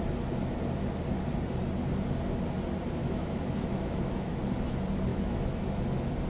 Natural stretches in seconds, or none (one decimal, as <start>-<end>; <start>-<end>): 0.0-3.0; 4.4-5.1; 5.8-6.3